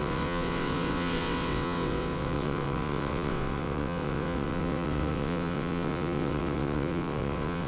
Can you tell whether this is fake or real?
fake